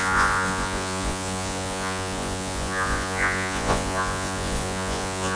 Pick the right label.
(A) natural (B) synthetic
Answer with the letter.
B